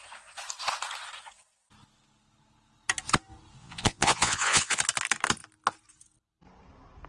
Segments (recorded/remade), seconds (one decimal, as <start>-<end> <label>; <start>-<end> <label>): 0.0-3.6 recorded; 3.6-4.8 remade; 4.8-7.1 recorded